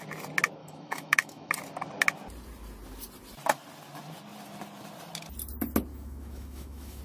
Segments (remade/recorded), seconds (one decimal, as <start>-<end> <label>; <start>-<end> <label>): 0.0-0.6 recorded; 0.6-1.5 remade; 1.5-5.9 recorded; 5.9-7.0 remade